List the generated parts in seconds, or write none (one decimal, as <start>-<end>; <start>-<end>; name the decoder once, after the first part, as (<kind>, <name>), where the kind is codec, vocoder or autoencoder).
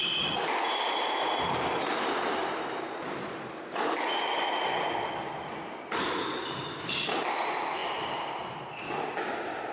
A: 0.0-7.8 (vocoder, BigVGAN v2); 8.7-9.7